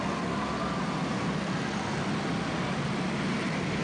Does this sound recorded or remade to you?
recorded